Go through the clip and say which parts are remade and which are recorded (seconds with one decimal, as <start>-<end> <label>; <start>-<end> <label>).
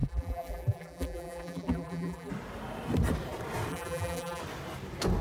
0.0-2.3 remade; 2.3-3.7 recorded; 3.7-4.4 remade; 4.4-5.2 recorded